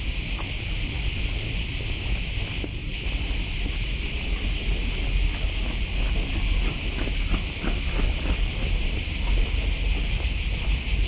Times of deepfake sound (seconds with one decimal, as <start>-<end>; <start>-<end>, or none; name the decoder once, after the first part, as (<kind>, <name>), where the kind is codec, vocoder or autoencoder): none